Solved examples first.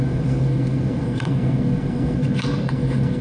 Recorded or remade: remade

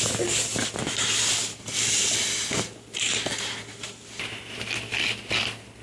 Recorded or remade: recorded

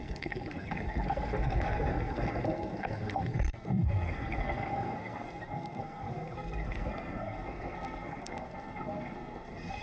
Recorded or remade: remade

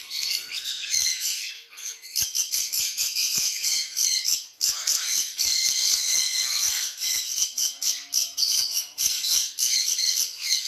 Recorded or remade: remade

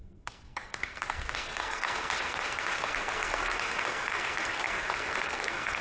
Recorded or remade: remade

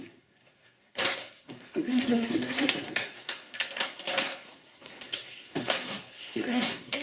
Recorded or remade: remade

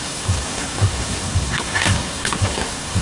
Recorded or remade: remade